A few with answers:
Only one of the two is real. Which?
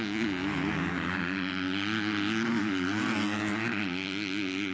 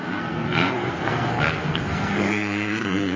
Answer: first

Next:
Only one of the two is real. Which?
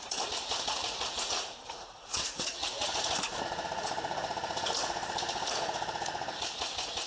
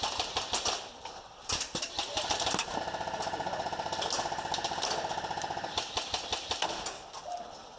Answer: second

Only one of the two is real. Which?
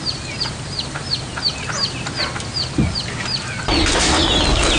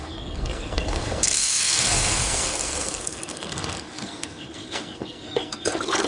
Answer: first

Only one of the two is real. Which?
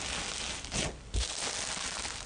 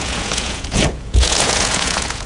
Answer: first